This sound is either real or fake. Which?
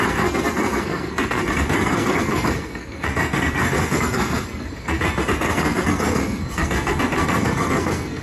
fake